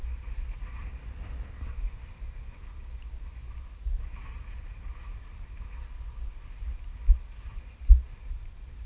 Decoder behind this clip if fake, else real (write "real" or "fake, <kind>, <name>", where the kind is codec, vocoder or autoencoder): real